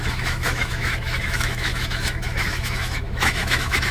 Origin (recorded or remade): remade